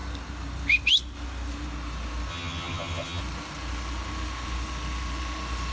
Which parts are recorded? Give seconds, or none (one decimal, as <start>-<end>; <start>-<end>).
0.0-2.3; 3.2-5.7